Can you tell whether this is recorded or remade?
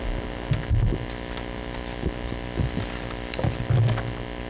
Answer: recorded